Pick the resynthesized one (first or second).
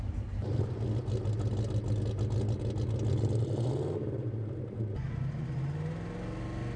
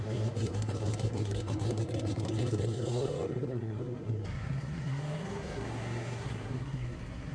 second